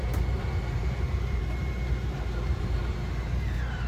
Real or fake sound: fake